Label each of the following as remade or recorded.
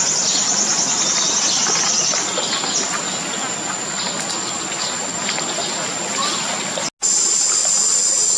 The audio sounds recorded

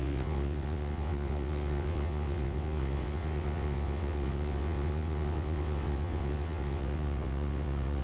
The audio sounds remade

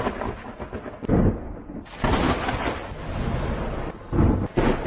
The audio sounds recorded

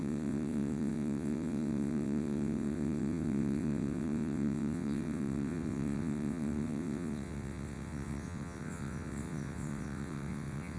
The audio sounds remade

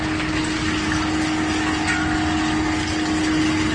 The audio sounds recorded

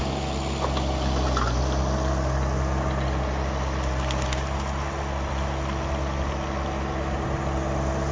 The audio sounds recorded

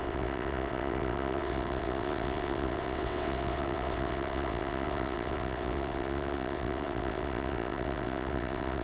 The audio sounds remade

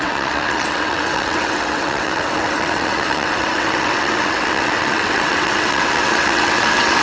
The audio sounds remade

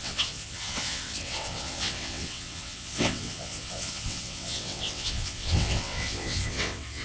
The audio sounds remade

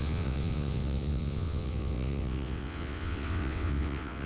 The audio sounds remade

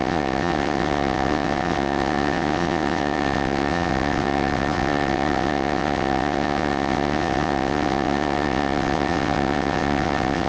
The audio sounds remade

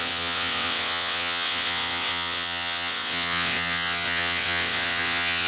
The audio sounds remade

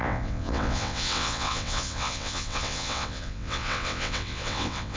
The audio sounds remade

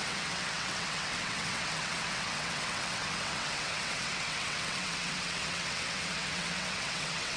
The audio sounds remade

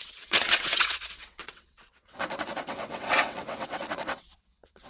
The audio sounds remade